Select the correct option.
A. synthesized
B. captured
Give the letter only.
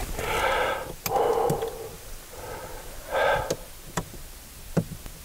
B